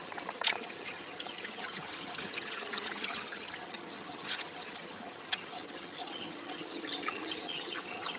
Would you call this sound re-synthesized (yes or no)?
yes